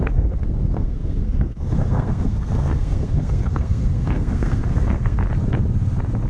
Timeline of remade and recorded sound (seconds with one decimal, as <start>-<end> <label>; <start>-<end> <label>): 0.0-5.2 remade; 5.2-6.3 recorded